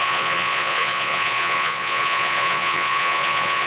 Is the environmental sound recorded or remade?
remade